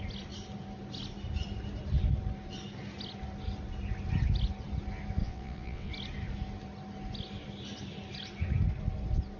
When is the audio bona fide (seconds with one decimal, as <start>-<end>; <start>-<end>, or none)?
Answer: 0.0-5.2; 5.9-9.4